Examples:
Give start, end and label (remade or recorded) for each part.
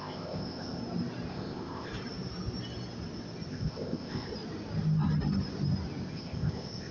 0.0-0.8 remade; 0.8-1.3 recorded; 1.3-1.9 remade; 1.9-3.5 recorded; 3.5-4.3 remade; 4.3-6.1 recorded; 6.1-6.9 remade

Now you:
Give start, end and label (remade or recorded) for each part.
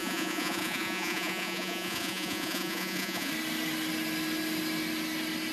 0.0-3.3 remade; 3.3-5.5 recorded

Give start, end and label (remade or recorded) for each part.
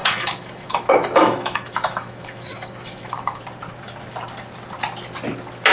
0.0-3.4 remade; 3.4-5.7 recorded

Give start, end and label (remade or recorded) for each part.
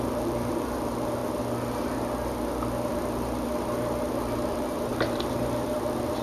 0.0-1.2 remade; 1.2-2.9 recorded; 2.9-6.2 remade